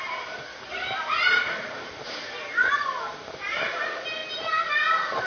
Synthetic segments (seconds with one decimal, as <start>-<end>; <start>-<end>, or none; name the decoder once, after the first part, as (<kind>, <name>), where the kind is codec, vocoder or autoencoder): 0.5-3.7 (vocoder, BigVGAN v2)

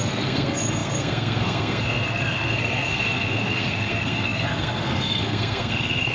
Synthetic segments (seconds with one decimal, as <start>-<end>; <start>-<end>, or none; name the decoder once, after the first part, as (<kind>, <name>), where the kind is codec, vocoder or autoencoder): 0.0-6.1 (codec, SNAC)

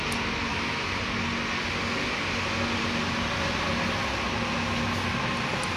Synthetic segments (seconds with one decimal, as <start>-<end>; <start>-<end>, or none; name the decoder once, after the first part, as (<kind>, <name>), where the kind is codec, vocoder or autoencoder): 0.5-1.0 (autoencoder, DAC-VAE)

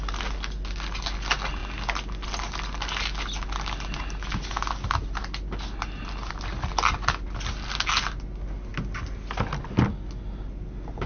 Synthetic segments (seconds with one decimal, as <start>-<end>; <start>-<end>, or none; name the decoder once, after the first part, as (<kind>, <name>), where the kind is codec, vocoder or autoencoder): none